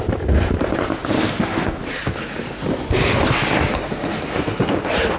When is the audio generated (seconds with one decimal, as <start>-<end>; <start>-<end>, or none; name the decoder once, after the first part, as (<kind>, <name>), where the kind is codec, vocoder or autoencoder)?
none